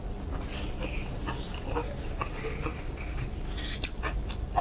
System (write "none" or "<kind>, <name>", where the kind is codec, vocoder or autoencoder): none